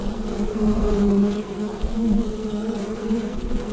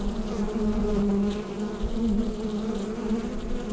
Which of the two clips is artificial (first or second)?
first